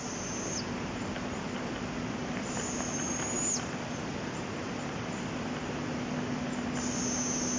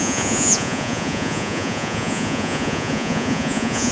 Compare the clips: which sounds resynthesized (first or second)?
second